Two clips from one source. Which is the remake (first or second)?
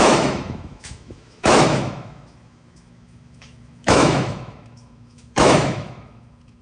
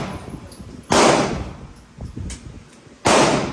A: first